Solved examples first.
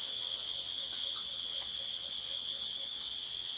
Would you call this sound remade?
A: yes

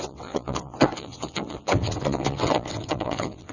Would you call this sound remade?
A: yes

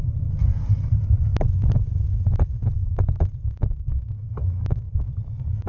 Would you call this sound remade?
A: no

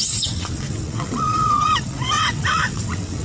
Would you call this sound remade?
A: yes